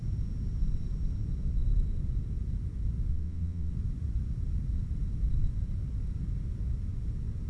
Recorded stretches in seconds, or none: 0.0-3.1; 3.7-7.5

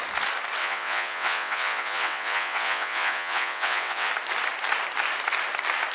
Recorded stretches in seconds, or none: 0.0-0.6; 4.1-5.9

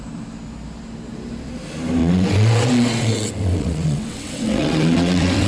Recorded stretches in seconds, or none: 0.0-2.0

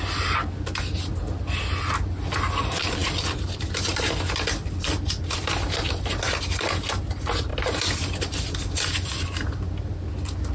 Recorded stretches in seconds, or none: 0.0-10.5

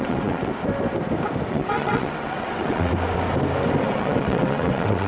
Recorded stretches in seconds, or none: 0.5-1.5; 2.9-3.8